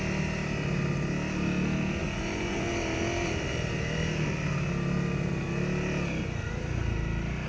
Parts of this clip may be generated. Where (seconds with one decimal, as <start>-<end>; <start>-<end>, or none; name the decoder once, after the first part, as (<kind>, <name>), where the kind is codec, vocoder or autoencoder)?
2.0-2.7 (vocoder, Vocos)